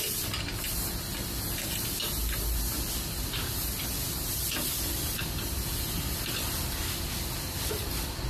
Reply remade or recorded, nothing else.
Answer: remade